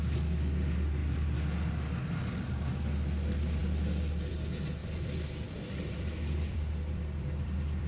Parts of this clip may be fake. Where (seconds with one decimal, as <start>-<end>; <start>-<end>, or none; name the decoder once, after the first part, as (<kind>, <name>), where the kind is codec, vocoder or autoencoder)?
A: 4.8-7.9 (vocoder, BigVGAN v2)